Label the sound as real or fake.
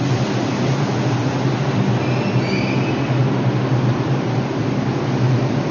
real